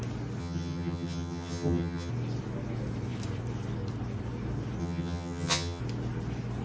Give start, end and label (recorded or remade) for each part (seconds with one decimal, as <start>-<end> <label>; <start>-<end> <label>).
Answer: 0.0-0.4 recorded; 0.4-2.1 remade; 2.1-4.8 recorded; 4.8-5.8 remade; 5.8-6.6 recorded